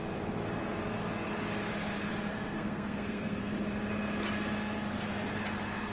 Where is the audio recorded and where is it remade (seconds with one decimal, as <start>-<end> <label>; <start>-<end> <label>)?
0.0-2.3 recorded; 2.3-3.5 remade; 3.5-5.9 recorded